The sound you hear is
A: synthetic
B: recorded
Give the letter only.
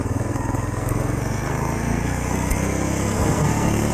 A